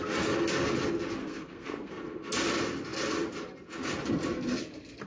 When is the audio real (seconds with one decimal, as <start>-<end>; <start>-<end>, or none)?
0.0-1.2; 2.0-5.1